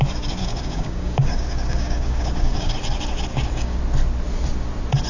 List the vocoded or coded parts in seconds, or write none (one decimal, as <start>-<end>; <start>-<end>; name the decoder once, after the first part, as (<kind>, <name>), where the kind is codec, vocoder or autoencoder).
0.4-2.7 (codec, DAC); 3.3-3.8